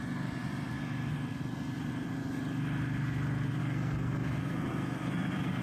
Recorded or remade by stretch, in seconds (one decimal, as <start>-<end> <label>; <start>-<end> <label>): 0.0-3.6 recorded; 3.6-5.6 remade